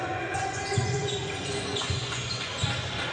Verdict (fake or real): fake